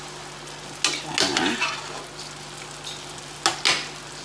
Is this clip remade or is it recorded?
recorded